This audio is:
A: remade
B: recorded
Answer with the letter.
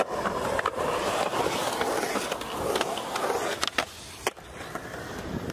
B